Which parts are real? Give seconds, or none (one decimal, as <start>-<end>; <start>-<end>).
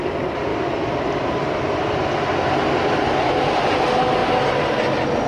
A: 0.0-5.3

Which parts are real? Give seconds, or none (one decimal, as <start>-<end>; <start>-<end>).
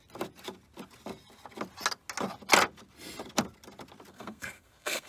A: 0.0-4.1